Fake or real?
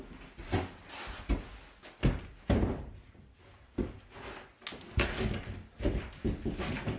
real